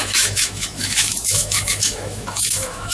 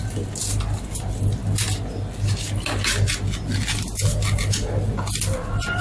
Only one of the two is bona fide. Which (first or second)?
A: second